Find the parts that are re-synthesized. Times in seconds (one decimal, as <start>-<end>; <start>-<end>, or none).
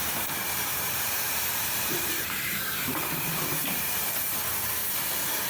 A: 0.7-4.0